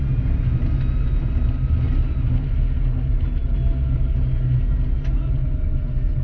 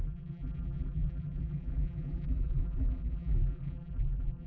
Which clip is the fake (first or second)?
second